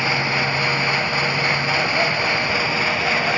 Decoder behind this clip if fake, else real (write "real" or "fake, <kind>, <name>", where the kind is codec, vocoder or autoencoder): real